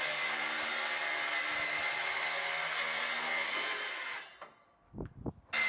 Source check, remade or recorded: recorded